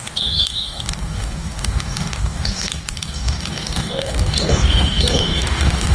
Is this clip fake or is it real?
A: fake